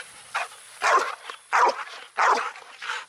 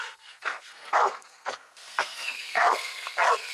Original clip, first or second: first